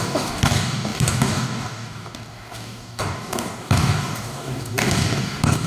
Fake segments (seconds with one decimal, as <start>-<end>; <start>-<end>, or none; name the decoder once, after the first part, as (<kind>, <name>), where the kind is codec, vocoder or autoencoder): 0.0-5.7 (codec, DAC)